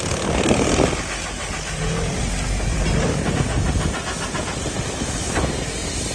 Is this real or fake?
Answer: real